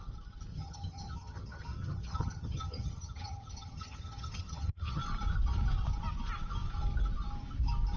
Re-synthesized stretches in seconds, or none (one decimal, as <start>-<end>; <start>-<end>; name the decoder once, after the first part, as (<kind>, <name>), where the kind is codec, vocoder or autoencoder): 0.5-5.0 (vocoder, HiFi-GAN)